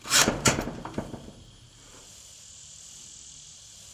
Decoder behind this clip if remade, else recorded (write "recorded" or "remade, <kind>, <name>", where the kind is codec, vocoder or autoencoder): remade, vocoder, BigVGAN v2